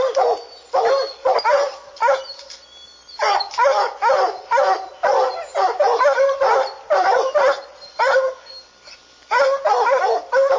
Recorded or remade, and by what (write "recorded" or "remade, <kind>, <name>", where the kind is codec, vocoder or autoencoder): recorded